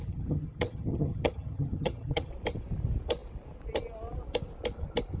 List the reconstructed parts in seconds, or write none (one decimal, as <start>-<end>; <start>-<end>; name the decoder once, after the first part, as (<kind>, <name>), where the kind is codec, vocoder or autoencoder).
0.0-2.3 (vocoder, HiFi-GAN)